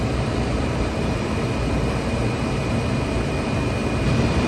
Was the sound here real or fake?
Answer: fake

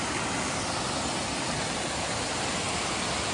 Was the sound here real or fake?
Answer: real